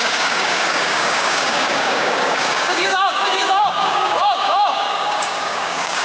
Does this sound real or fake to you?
fake